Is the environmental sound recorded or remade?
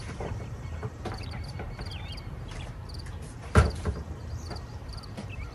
remade